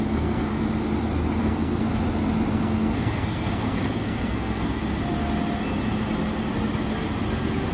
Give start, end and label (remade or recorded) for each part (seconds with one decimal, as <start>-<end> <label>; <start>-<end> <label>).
0.0-0.5 remade; 0.5-1.4 recorded; 1.4-1.9 remade; 1.9-2.5 recorded; 2.5-4.8 remade; 4.8-7.7 recorded